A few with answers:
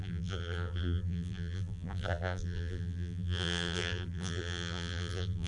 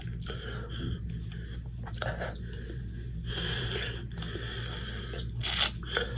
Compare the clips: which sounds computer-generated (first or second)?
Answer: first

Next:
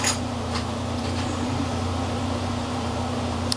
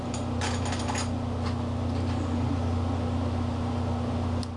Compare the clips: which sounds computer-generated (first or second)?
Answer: first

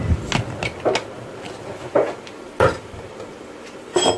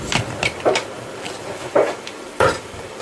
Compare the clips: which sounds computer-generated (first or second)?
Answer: second